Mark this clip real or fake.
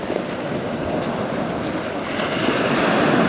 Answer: real